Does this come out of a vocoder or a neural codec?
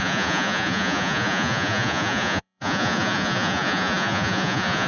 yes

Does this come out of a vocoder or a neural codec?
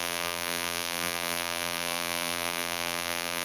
yes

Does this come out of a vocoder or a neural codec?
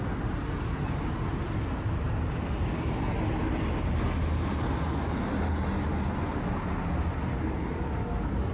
no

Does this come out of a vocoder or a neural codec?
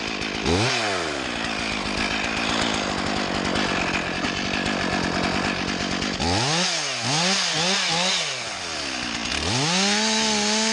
no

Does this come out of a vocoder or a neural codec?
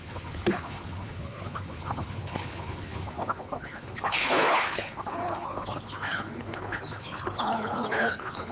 yes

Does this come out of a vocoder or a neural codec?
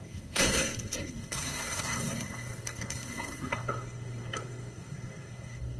yes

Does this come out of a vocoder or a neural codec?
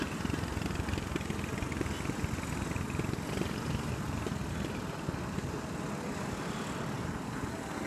no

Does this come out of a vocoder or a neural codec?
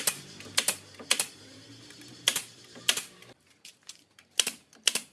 yes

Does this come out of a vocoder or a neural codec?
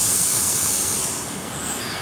yes